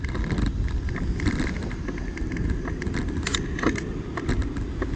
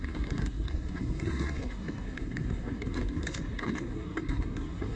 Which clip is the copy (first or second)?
second